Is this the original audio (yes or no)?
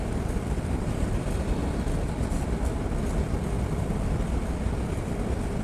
yes